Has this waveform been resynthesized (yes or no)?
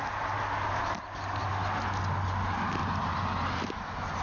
no